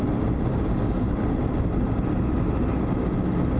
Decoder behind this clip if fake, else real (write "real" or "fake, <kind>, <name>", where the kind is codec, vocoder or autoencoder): real